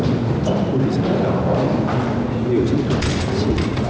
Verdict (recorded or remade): recorded